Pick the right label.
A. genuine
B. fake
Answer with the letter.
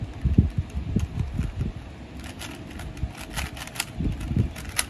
A